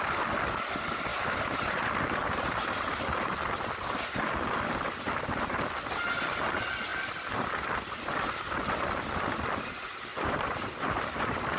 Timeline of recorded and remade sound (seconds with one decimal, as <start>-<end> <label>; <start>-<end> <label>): 0.0-1.1 recorded; 1.1-1.8 remade; 1.8-10.1 recorded; 10.1-10.7 remade; 10.7-11.6 recorded